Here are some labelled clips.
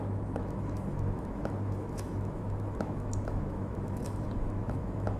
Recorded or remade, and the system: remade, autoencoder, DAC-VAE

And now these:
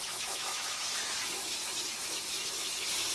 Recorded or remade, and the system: remade, autoencoder, DAC-VAE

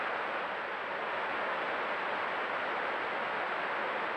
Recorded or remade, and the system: recorded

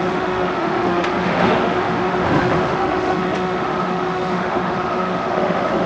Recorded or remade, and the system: remade, autoencoder, DAC-VAE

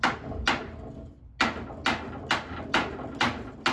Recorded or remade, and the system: recorded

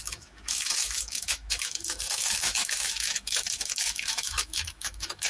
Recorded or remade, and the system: remade, autoencoder, DAC-VAE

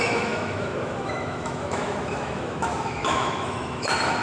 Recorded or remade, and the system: remade, autoencoder, DAC-VAE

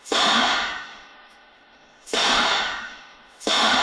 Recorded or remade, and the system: remade, autoencoder, DAC-VAE